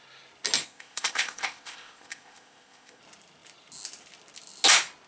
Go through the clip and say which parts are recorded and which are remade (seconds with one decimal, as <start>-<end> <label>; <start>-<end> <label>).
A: 0.0-0.6 recorded; 0.6-3.0 remade; 3.0-5.1 recorded